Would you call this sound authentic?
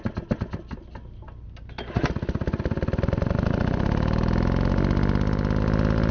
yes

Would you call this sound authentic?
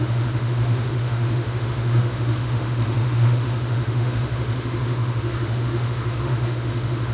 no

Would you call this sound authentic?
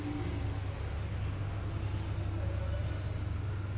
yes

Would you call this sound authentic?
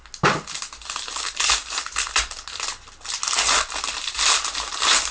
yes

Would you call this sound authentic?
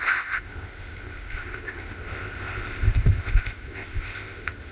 no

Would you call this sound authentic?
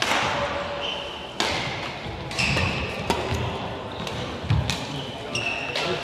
yes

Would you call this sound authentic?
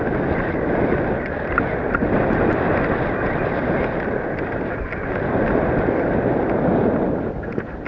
yes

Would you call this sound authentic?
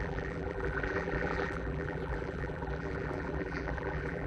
no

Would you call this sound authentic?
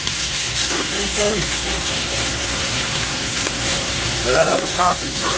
no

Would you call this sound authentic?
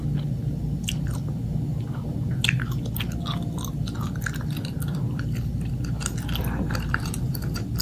yes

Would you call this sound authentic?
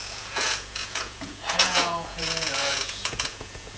no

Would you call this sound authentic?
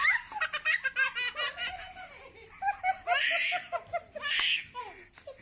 yes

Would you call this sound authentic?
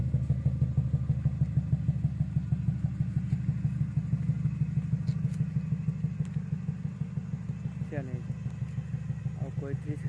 yes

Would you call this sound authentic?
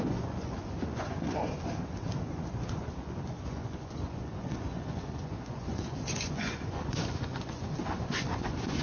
no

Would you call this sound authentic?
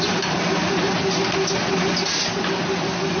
yes